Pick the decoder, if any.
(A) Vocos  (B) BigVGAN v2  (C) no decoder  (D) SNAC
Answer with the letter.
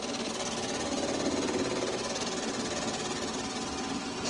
C